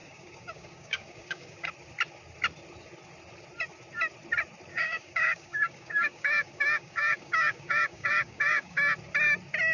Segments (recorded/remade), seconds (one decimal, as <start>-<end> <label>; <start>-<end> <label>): 0.0-1.7 remade; 1.7-4.7 recorded; 4.7-8.8 remade; 8.8-9.7 recorded